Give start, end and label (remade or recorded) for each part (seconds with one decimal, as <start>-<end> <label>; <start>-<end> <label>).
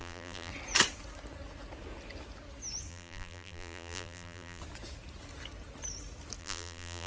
0.0-0.5 remade; 0.5-2.9 recorded; 2.9-4.6 remade; 4.6-6.4 recorded; 6.4-7.1 remade